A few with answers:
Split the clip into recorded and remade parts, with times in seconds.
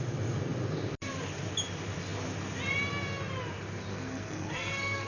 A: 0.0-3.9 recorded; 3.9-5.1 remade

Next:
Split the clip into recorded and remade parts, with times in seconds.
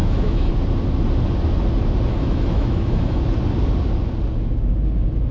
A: 0.0-0.5 remade; 0.5-2.1 recorded; 2.1-3.2 remade; 3.2-5.3 recorded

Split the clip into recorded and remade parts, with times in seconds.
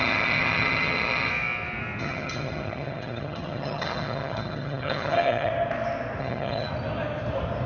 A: 0.0-1.3 remade; 1.3-2.0 recorded; 2.0-5.5 remade; 5.5-6.2 recorded; 6.2-6.7 remade; 6.7-7.7 recorded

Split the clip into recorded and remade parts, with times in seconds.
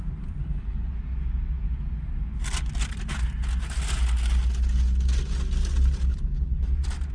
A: 0.0-0.4 recorded; 0.4-0.9 remade; 0.9-6.1 recorded; 6.1-6.6 remade; 6.6-7.1 recorded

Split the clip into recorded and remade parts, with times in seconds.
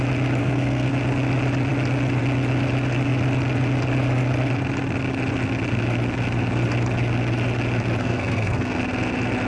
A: 0.0-0.4 recorded; 0.4-0.9 remade; 0.9-8.0 recorded; 8.0-8.8 remade; 8.8-9.5 recorded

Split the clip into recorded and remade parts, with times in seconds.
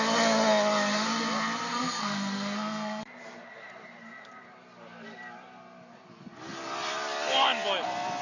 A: 0.0-1.7 recorded; 1.7-3.0 remade; 3.0-8.2 recorded